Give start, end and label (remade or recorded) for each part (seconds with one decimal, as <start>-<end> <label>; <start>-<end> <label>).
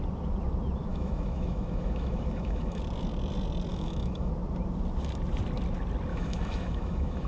0.0-0.9 recorded; 0.9-2.8 remade; 2.8-3.7 recorded; 3.7-4.3 remade; 4.3-6.1 recorded; 6.1-7.3 remade